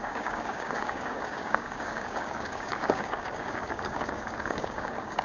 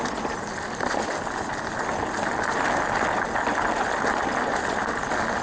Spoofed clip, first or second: first